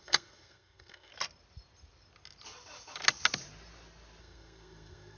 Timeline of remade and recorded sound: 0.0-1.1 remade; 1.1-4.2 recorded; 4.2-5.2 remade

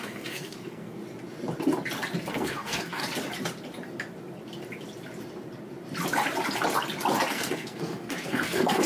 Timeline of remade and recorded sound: 0.0-1.0 remade; 1.0-2.3 recorded; 2.3-3.0 remade; 3.0-7.3 recorded; 7.3-8.9 remade

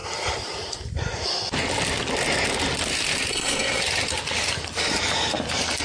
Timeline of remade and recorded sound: 0.0-3.3 recorded; 3.3-3.8 remade; 3.8-5.8 recorded

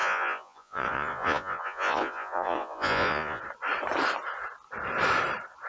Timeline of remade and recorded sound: 0.0-3.4 remade; 3.4-5.7 recorded

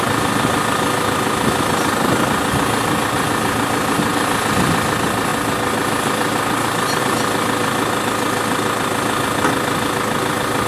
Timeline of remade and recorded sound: 0.0-10.7 recorded

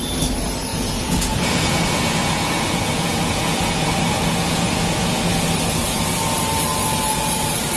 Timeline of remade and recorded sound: 0.0-0.7 recorded; 0.7-5.4 remade; 5.4-7.8 recorded